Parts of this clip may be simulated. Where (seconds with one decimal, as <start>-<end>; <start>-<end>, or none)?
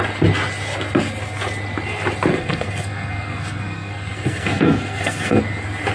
2.3-5.4